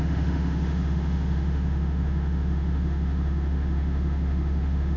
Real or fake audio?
fake